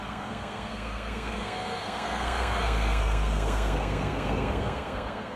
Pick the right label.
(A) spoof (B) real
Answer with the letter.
A